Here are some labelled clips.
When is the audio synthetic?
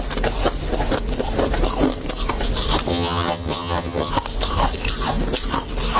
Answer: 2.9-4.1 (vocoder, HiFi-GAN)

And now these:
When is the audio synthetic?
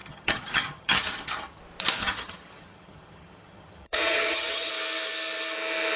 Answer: 0.0-1.6 (vocoder, HiFi-GAN); 2.0-4.7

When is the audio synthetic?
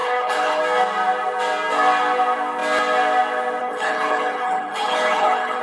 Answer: 0.0-0.6 (codec, HILCodec); 3.6-5.6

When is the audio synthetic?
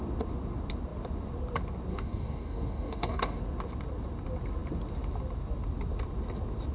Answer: 1.9-3.4 (codec, DAC)